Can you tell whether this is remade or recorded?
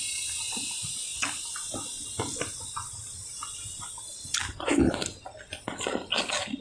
recorded